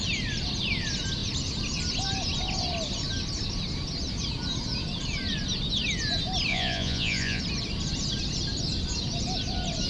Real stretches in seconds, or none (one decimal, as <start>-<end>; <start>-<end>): 0.0-6.5; 7.4-9.9